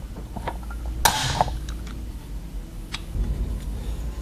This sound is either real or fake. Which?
real